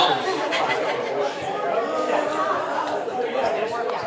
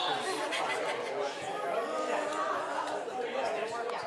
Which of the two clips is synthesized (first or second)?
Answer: first